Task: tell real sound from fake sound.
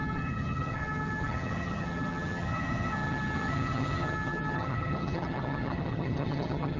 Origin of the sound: fake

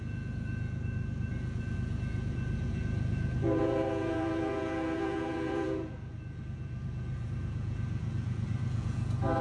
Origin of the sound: fake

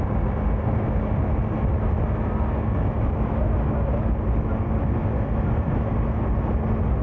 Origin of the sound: real